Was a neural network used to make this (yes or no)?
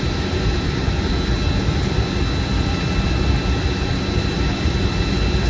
no